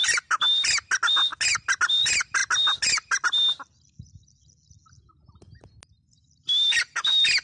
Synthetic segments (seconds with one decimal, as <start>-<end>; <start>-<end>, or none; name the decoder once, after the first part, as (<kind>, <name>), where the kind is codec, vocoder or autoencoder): none